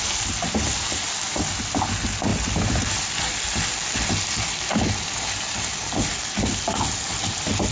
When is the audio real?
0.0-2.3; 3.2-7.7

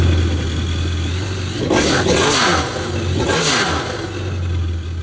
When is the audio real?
0.0-5.0

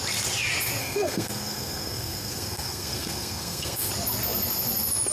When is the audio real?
0.0-0.8; 3.9-5.1

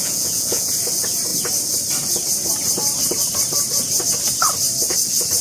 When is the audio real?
0.7-5.4

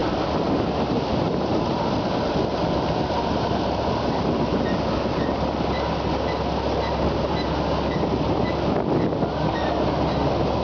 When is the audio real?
0.0-10.6

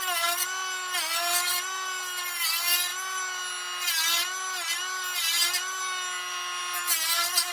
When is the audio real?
0.0-7.5

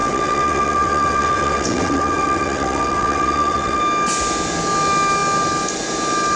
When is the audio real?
3.8-6.4